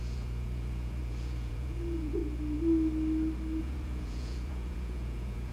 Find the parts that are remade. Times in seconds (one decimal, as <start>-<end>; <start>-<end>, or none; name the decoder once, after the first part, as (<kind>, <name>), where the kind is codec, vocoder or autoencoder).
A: 0.0-2.2 (vocoder, Vocos); 3.6-5.5